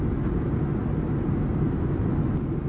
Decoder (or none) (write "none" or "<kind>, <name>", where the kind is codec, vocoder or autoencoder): none